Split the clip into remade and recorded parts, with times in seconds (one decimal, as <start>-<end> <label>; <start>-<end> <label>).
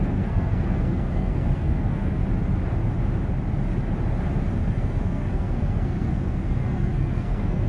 0.0-2.2 remade; 2.2-4.6 recorded; 4.6-7.7 remade